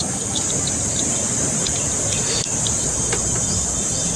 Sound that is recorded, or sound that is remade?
recorded